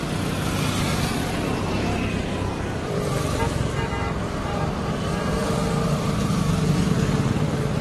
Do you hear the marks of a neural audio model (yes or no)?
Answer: yes